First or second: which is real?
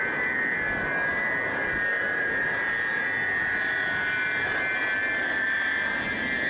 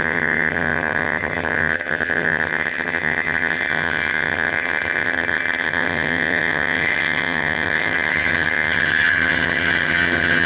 first